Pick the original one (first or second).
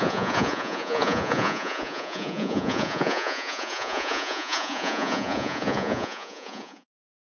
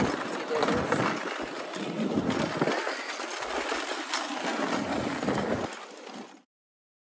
second